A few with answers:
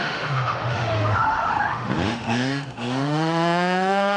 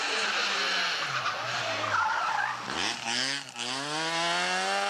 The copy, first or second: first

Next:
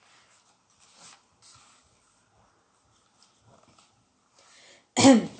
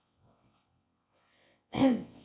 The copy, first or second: second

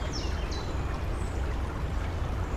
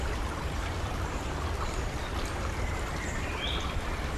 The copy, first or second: second